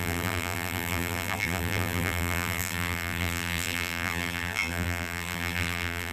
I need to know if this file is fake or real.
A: fake